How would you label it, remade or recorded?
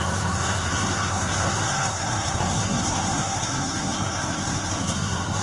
remade